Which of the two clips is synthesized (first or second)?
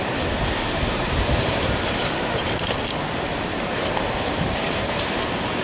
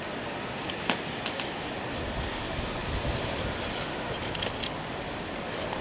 first